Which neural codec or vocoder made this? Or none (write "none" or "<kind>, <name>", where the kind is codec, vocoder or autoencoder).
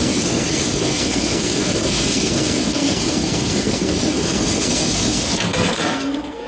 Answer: codec, SNAC